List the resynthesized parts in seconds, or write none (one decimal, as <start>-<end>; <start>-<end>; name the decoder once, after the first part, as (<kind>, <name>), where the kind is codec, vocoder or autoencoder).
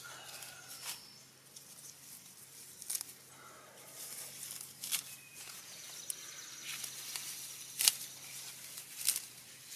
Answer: 5.3-5.9 (vocoder, Vocos)